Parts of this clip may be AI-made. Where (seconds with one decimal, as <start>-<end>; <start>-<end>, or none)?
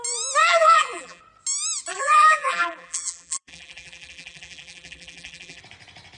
0.4-1.2; 1.9-5.6